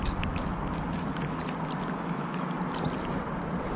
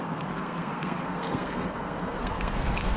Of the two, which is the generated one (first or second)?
second